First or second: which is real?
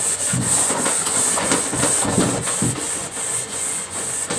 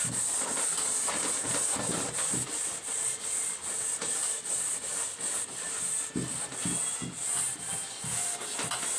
second